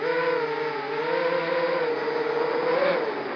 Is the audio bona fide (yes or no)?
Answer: yes